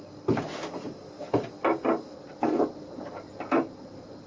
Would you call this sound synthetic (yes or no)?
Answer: no